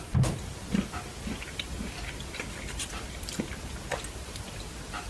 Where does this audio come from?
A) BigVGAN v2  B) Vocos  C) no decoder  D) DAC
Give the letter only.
A